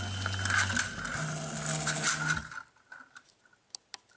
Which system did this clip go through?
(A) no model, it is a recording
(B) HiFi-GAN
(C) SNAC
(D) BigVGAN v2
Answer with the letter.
A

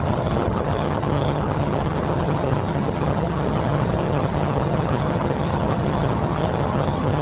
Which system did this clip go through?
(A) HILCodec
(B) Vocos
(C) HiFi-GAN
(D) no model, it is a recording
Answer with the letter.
C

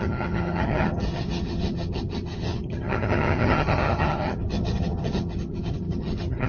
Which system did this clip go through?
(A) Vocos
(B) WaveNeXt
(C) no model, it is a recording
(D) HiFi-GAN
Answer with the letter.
D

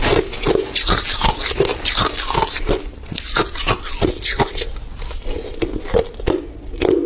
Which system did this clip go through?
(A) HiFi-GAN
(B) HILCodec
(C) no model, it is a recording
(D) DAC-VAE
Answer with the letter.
C